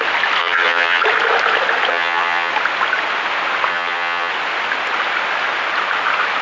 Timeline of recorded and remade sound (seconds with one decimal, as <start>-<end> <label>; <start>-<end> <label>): 0.0-0.4 recorded; 0.4-1.0 remade; 1.0-1.9 recorded; 1.9-2.5 remade; 2.5-3.7 recorded; 3.7-4.3 remade; 4.3-6.4 recorded